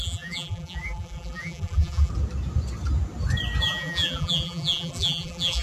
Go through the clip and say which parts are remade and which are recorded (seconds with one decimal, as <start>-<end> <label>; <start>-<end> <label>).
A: 0.0-2.1 remade; 2.1-3.6 recorded; 3.6-5.6 remade